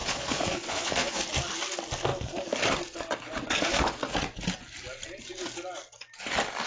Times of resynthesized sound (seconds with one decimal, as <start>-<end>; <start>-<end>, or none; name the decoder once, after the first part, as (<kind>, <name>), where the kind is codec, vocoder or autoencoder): 0.0-1.2 (vocoder, Vocos)